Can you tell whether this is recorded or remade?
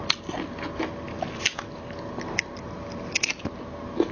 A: recorded